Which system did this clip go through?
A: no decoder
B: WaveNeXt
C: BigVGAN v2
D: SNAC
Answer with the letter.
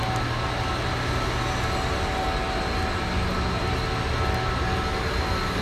A